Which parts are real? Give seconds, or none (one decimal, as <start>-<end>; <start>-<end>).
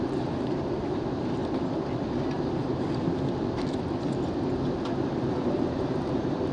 1.4-5.3